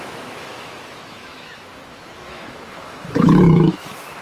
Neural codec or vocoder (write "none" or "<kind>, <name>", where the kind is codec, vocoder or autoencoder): autoencoder, DAC-VAE